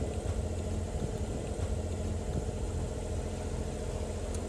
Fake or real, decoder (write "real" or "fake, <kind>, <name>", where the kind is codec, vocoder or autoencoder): real